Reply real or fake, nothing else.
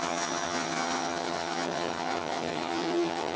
fake